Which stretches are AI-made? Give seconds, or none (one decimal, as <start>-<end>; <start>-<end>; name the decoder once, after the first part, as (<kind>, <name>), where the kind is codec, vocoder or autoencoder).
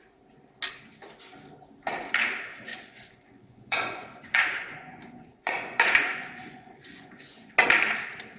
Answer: 2.7-7.5 (vocoder, Vocos)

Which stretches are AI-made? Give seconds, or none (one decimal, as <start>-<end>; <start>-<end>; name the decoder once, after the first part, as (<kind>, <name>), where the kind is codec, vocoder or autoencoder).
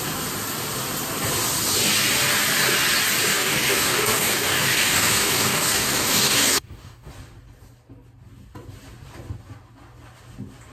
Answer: 3.3-7.1 (codec, DAC)